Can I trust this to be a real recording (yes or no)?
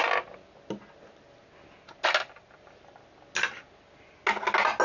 yes